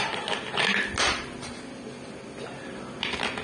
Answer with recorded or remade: recorded